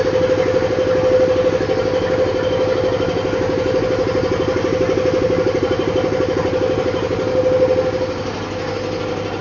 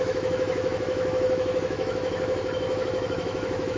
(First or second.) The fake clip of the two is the second